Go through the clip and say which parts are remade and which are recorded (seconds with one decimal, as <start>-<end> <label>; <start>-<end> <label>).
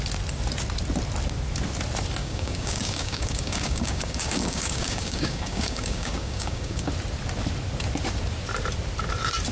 0.0-2.2 recorded; 2.2-6.9 remade; 6.9-9.5 recorded